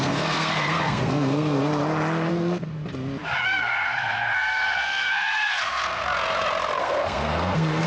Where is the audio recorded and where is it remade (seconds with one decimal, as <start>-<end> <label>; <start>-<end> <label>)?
0.0-1.7 remade; 1.7-2.3 recorded; 2.3-2.7 remade; 2.7-3.6 recorded; 3.6-6.0 remade; 6.0-6.8 recorded; 6.8-7.9 remade

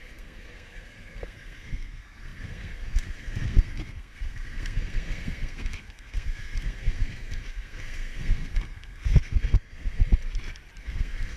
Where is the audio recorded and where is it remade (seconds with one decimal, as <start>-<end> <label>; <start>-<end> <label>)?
0.0-10.0 remade; 10.0-10.8 recorded; 10.8-11.4 remade

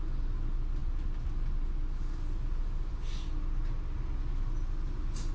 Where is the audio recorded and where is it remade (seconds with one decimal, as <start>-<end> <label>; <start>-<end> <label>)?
0.0-5.3 recorded

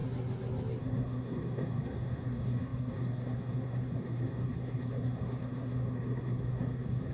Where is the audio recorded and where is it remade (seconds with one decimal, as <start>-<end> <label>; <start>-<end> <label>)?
0.0-0.8 recorded; 0.8-7.1 remade

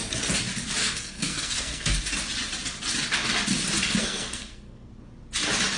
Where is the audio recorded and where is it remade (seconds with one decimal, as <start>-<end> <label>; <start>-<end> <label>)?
0.0-0.8 recorded; 0.8-2.0 remade; 2.0-4.0 recorded; 4.0-4.9 remade; 4.9-5.8 recorded

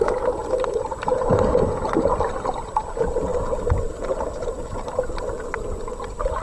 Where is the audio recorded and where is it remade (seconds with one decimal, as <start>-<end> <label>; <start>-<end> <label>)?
0.0-6.4 recorded

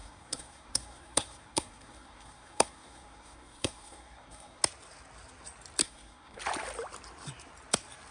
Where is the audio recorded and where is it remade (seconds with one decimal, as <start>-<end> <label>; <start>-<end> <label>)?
0.0-4.6 remade; 4.6-5.8 recorded; 5.8-6.4 remade; 6.4-8.1 recorded

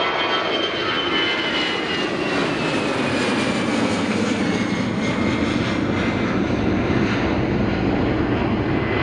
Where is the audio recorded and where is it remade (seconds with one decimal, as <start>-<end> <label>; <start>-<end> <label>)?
0.0-3.7 recorded; 3.7-4.4 remade; 4.4-9.0 recorded